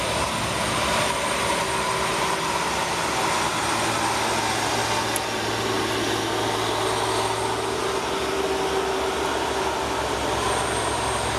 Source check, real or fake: real